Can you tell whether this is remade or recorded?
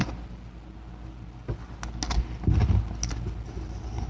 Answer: recorded